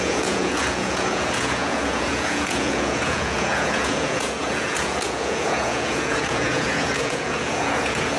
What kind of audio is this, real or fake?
fake